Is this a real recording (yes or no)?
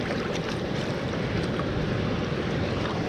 yes